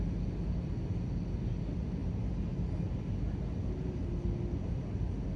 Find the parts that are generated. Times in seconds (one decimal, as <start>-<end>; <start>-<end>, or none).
none